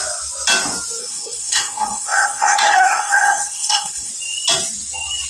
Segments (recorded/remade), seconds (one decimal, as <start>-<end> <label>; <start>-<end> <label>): 0.0-1.0 recorded; 1.0-4.1 remade; 4.1-5.3 recorded